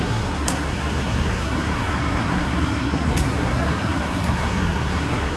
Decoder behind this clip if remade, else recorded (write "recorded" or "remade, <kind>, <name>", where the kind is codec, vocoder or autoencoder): remade, codec, SNAC